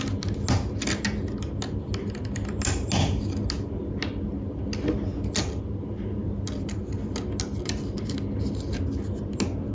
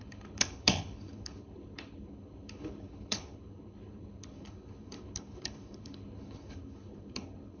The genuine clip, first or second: first